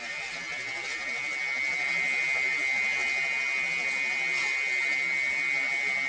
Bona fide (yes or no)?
yes